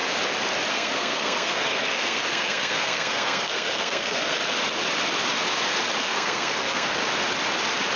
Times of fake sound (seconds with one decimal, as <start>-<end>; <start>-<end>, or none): 0.7-4.4; 6.0-7.0

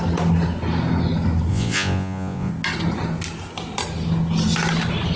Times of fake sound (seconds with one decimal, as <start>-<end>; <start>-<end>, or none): 1.5-2.5

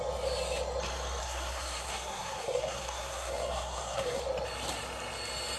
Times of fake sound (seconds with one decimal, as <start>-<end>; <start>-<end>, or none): 1.2-4.2

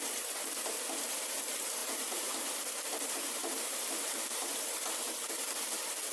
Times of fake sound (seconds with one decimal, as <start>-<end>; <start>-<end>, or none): 1.8-4.6

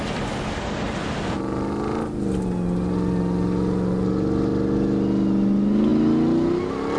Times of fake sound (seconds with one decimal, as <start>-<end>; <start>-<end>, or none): none

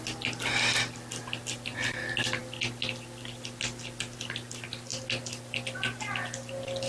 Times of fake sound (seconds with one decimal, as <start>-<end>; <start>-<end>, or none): none

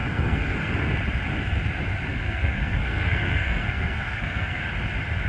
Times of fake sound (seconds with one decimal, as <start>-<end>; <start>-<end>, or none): 0.0-0.7; 2.1-4.6

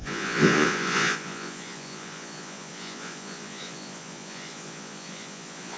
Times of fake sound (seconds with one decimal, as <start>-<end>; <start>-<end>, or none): 0.0-5.8